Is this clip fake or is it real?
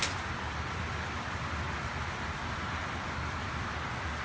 real